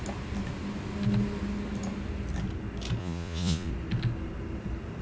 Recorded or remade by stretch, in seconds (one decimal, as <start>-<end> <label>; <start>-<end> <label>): 0.0-3.0 recorded; 3.0-3.7 remade; 3.7-5.0 recorded